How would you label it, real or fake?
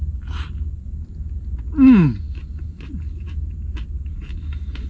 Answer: real